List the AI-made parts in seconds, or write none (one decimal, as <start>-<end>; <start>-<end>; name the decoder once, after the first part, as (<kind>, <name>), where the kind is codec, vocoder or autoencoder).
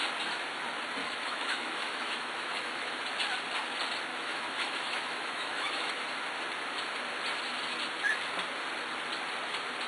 1.0-3.0 (autoencoder, DAC-VAE); 4.1-5.9